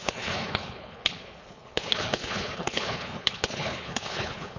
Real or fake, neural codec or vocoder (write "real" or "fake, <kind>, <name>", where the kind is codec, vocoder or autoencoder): fake, codec, HILCodec